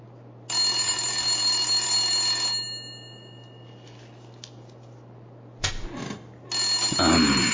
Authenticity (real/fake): real